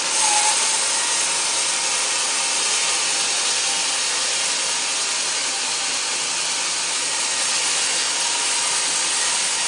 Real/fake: real